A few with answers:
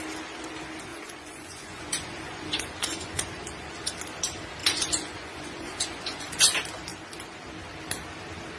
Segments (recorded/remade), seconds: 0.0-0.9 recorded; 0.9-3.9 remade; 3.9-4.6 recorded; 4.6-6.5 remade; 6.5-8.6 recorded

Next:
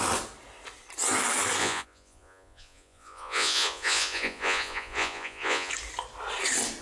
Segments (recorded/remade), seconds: 0.0-1.6 recorded; 1.6-5.7 remade; 5.7-6.8 recorded

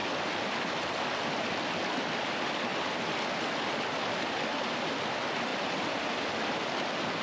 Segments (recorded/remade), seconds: 0.0-7.2 recorded

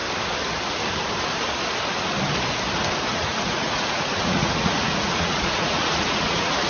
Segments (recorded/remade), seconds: 0.0-3.1 recorded; 3.1-6.7 remade